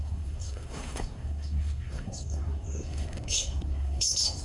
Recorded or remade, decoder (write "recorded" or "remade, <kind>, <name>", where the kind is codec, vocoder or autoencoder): remade, codec, SNAC